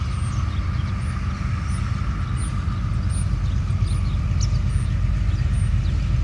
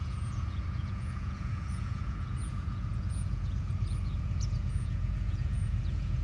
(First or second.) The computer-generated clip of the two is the second